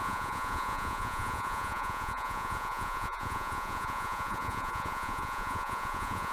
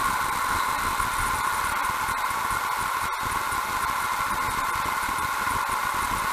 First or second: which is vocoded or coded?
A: first